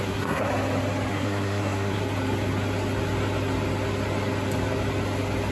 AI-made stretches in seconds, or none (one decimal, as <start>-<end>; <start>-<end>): 0.0-0.5; 1.1-2.0